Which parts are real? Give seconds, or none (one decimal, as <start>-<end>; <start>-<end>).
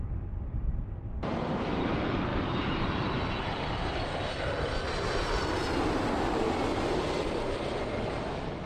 0.0-8.7